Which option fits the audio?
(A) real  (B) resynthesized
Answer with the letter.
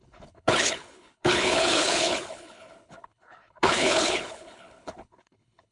B